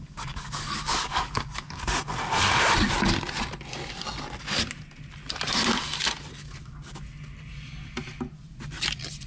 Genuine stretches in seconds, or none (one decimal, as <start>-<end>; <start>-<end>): 1.8-9.3